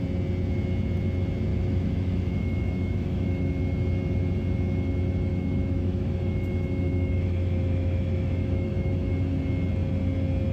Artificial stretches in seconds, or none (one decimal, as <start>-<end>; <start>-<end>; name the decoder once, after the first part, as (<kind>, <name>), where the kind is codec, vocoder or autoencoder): 1.5-3.5 (autoencoder, DAC-VAE); 5.3-9.1